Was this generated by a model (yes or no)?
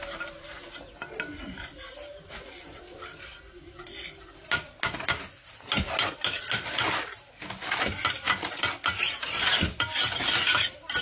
no